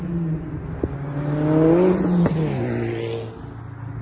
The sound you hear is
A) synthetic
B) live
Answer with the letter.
B